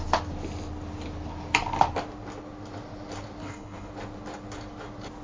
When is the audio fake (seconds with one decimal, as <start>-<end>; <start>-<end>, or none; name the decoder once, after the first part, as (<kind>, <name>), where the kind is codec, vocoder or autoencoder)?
3.4-3.9 (codec, HILCodec)